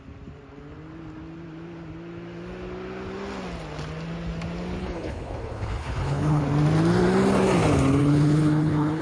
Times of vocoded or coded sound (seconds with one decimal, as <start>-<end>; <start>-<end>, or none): 4.8-6.4; 8.0-9.0